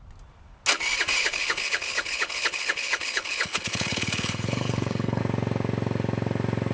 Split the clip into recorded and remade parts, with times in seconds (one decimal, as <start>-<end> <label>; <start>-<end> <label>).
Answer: 0.0-1.2 recorded; 1.2-5.2 remade; 5.2-6.7 recorded